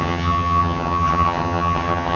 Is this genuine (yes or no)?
no